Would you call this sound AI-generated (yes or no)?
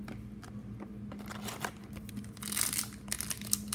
no